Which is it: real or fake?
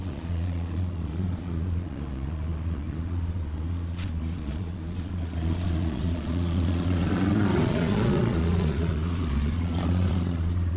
fake